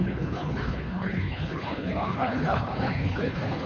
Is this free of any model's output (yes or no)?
no